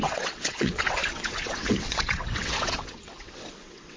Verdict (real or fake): fake